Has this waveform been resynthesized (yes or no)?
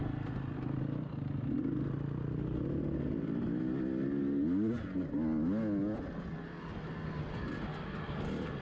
no